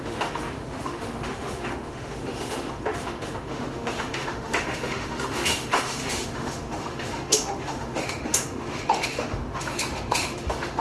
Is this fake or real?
fake